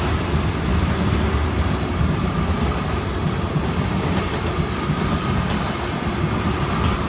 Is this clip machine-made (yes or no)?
no